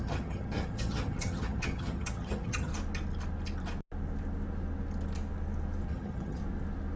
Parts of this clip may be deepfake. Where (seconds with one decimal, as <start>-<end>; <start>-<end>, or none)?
0.0-2.7; 5.9-6.4